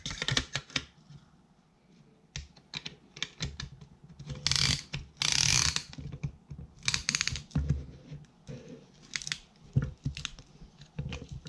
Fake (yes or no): no